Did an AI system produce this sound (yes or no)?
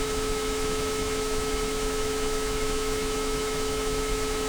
yes